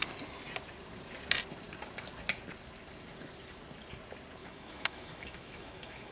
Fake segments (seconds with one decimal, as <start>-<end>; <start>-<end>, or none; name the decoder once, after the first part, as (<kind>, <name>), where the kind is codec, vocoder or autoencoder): 4.4-6.1 (autoencoder, DAC-VAE)